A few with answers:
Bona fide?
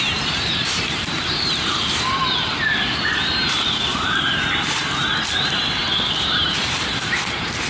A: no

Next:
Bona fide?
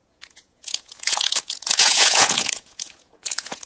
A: no